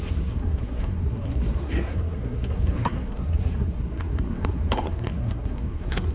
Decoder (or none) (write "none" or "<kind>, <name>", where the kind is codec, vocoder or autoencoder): codec, SNAC